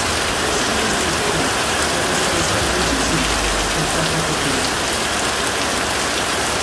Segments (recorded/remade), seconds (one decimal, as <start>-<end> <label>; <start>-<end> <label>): 0.0-6.6 recorded